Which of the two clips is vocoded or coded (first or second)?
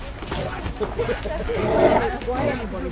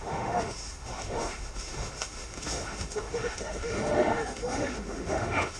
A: second